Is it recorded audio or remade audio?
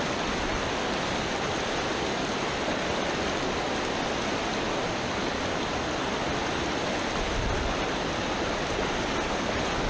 recorded